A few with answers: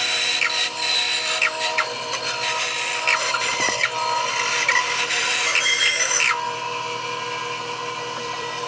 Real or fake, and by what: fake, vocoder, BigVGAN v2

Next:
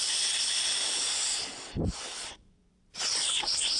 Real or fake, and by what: fake, vocoder, BigVGAN v2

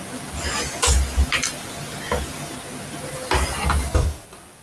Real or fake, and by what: real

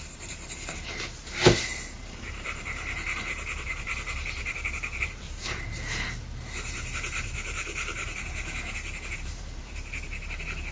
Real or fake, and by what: fake, vocoder, BigVGAN v2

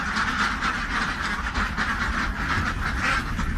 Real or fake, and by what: real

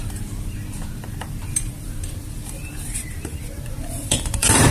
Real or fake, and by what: fake, vocoder, BigVGAN v2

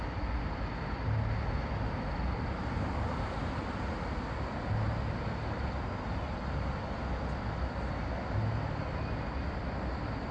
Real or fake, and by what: real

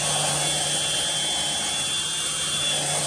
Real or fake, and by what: real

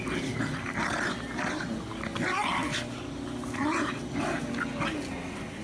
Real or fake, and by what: real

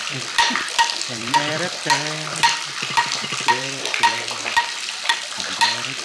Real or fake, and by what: fake, vocoder, BigVGAN v2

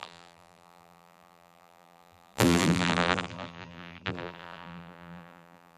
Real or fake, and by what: fake, vocoder, BigVGAN v2